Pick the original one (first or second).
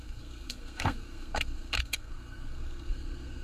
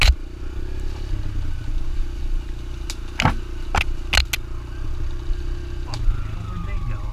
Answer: second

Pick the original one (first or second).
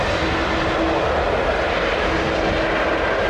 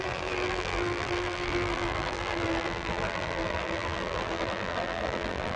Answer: first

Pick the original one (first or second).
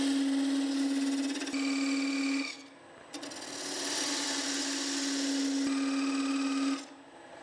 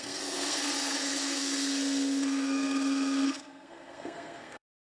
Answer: first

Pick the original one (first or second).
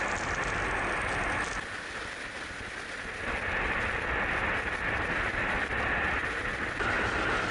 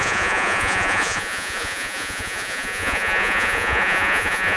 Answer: first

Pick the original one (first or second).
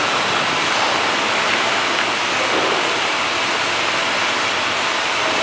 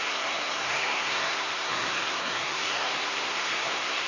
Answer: first